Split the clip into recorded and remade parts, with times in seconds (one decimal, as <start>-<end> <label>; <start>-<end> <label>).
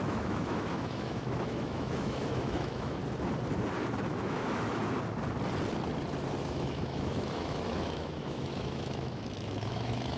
0.0-3.0 remade; 3.0-4.1 recorded; 4.1-4.8 remade; 4.8-6.4 recorded; 6.4-10.2 remade